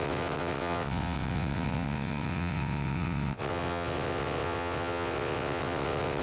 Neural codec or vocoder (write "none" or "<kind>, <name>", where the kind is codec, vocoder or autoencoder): vocoder, WaveNeXt